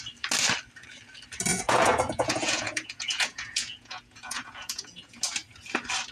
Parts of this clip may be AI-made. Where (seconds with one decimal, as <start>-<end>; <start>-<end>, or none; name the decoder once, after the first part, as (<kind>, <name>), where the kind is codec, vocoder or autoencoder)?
1.5-5.2 (vocoder, Vocos)